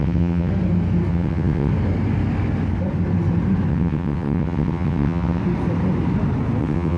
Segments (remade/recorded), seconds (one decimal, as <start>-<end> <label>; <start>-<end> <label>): 0.0-0.5 remade; 0.5-1.1 recorded; 1.1-1.7 remade; 1.7-3.7 recorded; 3.7-5.4 remade; 5.4-6.6 recorded; 6.6-7.0 remade